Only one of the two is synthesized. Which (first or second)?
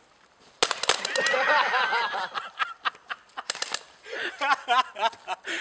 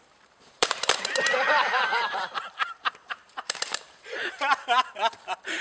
second